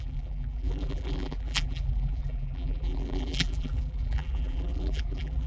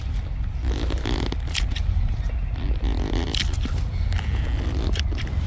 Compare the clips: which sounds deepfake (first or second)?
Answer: first